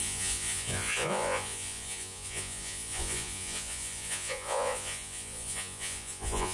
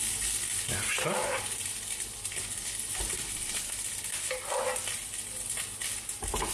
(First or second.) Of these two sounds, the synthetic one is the first